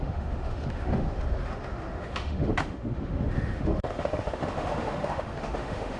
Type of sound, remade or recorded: remade